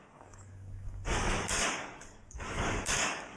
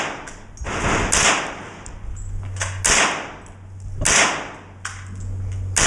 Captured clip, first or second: second